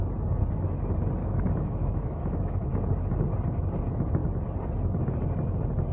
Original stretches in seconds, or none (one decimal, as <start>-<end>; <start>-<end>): 0.0-1.2; 2.7-5.9